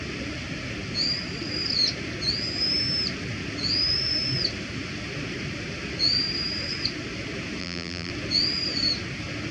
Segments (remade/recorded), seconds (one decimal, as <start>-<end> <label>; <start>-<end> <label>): 0.0-7.6 recorded; 7.6-8.1 remade; 8.1-9.5 recorded